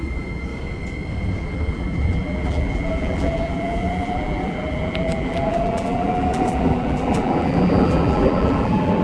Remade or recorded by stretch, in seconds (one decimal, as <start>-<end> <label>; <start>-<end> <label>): 0.0-0.5 remade; 0.5-1.4 recorded; 1.4-9.0 remade